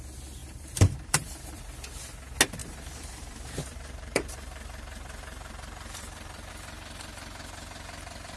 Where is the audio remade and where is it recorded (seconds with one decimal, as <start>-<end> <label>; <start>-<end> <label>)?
0.0-0.4 recorded; 0.4-1.6 remade; 1.6-2.6 recorded; 2.6-6.5 remade; 6.5-8.4 recorded

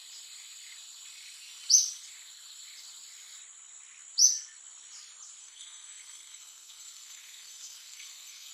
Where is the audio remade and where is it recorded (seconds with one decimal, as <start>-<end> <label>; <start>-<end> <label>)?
0.0-5.4 recorded; 5.4-8.5 remade

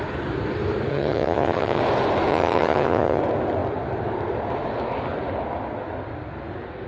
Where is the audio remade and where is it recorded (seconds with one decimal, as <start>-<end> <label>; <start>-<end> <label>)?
0.0-0.9 recorded; 0.9-1.8 remade; 1.8-2.3 recorded; 2.3-3.2 remade; 3.2-6.9 recorded

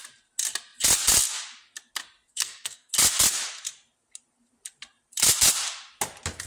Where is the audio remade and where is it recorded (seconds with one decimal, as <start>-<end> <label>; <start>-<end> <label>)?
0.0-2.3 recorded; 2.3-2.9 remade; 2.9-6.5 recorded

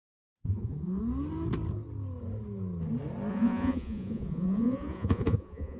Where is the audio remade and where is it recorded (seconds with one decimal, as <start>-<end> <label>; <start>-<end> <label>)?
0.0-0.4 recorded; 0.4-1.0 remade; 1.0-3.3 recorded; 3.3-5.8 remade

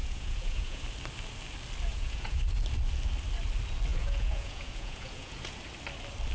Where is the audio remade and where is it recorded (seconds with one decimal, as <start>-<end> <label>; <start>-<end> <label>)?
0.0-0.8 remade; 0.8-1.9 recorded; 1.9-2.4 remade; 2.4-3.9 recorded; 3.9-5.6 remade; 5.6-6.3 recorded

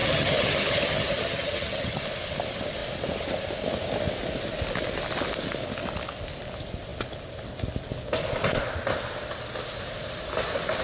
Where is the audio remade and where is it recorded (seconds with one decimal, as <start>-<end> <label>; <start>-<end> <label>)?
0.0-2.0 remade; 2.0-10.8 recorded

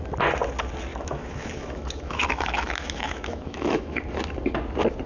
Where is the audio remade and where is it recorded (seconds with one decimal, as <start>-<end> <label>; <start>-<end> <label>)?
0.0-0.9 recorded; 0.9-4.0 remade; 4.0-5.1 recorded